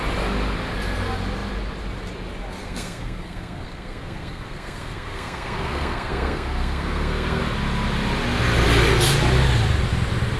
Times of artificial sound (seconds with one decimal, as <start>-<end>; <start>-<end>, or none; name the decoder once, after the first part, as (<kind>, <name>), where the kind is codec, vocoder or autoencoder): 2.6-7.4 (codec, SNAC)